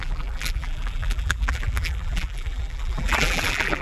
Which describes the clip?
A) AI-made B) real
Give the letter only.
A